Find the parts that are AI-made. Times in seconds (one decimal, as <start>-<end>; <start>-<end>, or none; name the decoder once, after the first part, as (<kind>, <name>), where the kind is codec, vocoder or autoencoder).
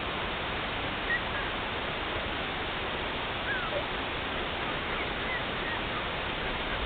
none